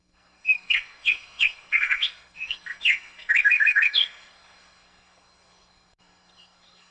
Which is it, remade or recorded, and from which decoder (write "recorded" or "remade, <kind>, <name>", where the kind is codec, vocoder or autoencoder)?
remade, codec, SNAC